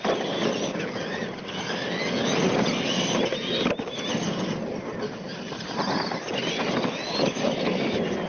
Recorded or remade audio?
recorded